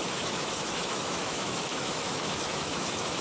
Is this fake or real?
fake